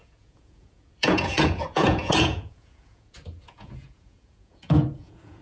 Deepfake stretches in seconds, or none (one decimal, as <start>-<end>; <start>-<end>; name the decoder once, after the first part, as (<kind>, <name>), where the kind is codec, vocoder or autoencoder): 0.0-5.4 (vocoder, Vocos)